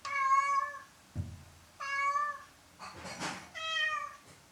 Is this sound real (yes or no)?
yes